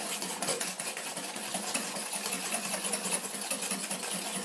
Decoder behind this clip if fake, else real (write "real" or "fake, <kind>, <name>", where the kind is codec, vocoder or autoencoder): fake, vocoder, Vocos